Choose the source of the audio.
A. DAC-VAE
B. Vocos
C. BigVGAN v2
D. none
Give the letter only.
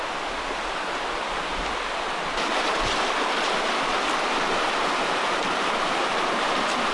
D